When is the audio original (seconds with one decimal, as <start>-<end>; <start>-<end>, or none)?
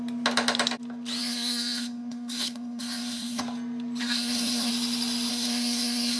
0.0-1.2; 3.4-4.0; 4.7-5.3